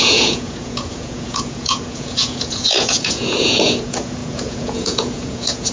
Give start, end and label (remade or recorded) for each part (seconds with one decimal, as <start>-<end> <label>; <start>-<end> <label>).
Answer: 0.0-5.7 remade